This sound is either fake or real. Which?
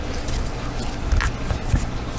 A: real